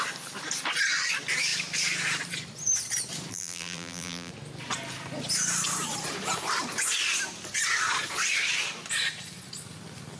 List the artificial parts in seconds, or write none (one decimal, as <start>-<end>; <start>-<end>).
3.3-4.3